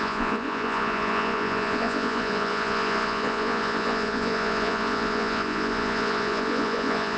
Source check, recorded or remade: remade